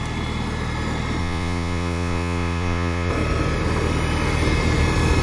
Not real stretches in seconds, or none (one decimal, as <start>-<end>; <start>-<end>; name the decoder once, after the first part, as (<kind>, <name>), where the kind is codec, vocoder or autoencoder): 1.2-3.1 (vocoder, Vocos)